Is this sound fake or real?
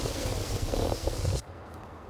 fake